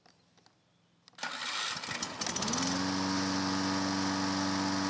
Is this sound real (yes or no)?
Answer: yes